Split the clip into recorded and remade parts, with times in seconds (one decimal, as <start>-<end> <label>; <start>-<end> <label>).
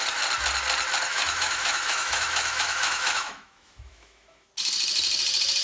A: 0.0-1.1 recorded; 1.1-4.5 remade; 4.5-5.6 recorded